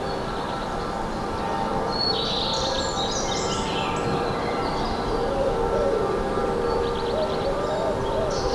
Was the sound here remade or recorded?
remade